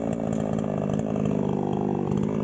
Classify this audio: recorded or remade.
recorded